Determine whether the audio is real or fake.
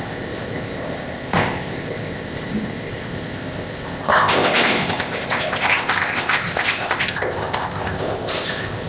fake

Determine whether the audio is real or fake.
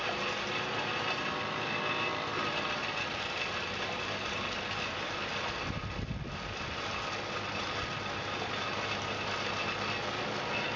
real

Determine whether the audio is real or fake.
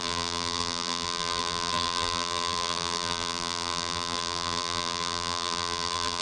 fake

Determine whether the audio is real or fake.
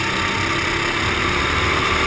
real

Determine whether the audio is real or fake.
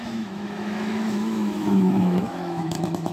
fake